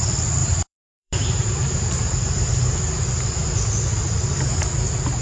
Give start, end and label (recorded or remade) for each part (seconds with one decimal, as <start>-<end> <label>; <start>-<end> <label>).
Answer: 0.0-0.4 recorded; 0.4-2.7 remade; 2.7-5.2 recorded